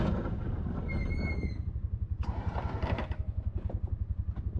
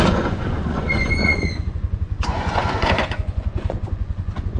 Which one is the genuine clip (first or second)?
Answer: first